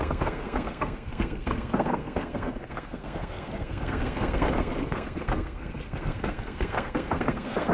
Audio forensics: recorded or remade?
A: remade